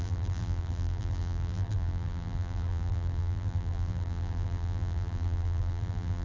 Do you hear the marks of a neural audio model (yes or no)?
yes